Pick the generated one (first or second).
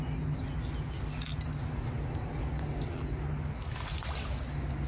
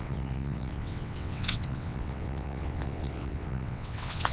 second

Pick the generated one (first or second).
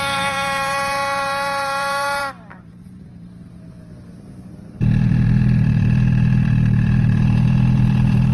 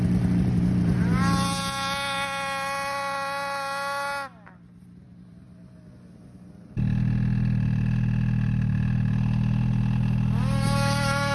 first